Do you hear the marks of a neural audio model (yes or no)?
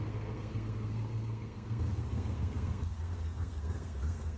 yes